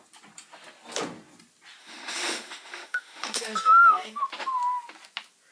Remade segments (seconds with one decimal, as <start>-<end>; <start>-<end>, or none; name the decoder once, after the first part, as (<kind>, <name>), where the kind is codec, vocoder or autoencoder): 1.8-4.2 (autoencoder, DAC-VAE)